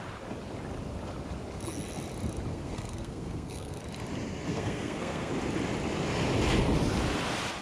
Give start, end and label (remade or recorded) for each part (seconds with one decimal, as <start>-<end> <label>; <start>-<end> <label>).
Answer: 0.0-2.5 recorded; 2.5-3.8 remade; 3.8-4.5 recorded; 4.5-5.3 remade; 5.3-7.6 recorded